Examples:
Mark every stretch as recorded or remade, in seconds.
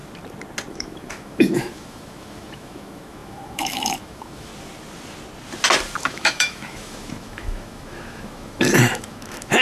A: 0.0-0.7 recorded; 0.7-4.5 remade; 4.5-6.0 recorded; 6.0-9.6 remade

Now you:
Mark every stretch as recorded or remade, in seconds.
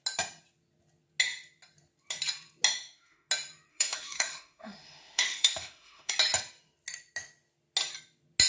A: 0.0-2.7 recorded; 2.7-3.3 remade; 3.3-3.7 recorded; 3.7-6.1 remade; 6.1-8.5 recorded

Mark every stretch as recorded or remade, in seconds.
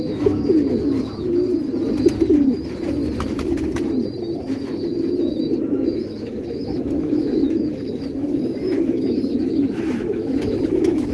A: 0.0-1.5 remade; 1.5-5.6 recorded; 5.6-11.1 remade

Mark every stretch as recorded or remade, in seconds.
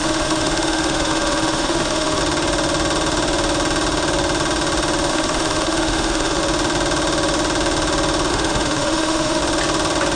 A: 0.0-2.2 remade; 2.2-5.1 recorded; 5.1-6.4 remade; 6.4-8.3 recorded; 8.3-9.4 remade; 9.4-10.2 recorded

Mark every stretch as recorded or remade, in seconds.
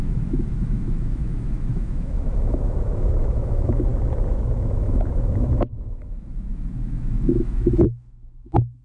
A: 0.0-3.9 remade; 3.9-4.5 recorded; 4.5-8.8 remade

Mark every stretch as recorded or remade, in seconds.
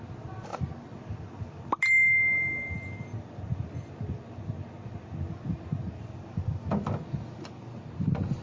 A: 0.0-8.4 recorded